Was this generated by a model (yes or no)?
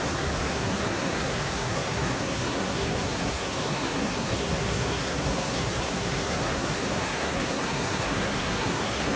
yes